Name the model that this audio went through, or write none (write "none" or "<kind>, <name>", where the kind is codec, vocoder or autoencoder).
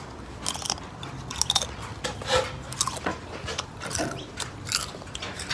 none